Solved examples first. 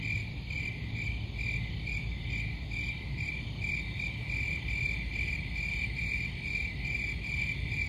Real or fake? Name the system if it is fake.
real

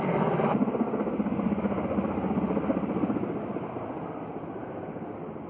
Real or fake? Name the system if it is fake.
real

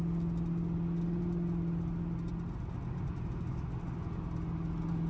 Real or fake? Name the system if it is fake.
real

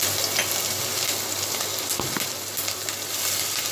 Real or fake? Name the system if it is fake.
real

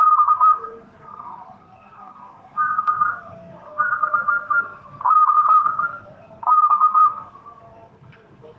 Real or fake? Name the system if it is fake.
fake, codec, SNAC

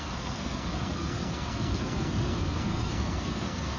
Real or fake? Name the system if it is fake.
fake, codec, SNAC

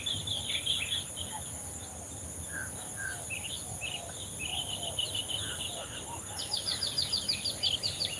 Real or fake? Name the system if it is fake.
real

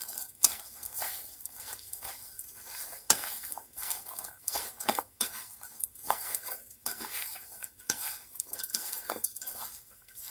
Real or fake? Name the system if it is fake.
fake, codec, SNAC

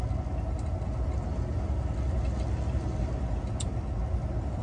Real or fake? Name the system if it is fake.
real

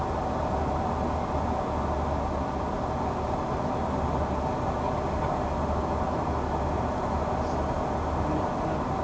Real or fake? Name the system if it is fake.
real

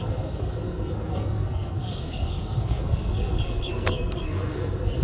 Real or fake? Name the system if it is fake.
fake, codec, SNAC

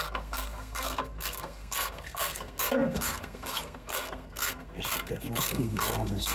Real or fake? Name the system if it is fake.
fake, codec, SNAC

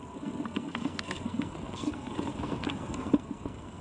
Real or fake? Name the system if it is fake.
fake, codec, SNAC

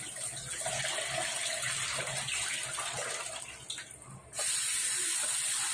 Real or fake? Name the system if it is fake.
real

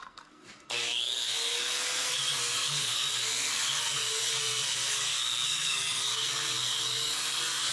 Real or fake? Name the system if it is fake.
fake, codec, SNAC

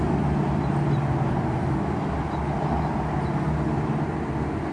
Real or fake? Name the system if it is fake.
real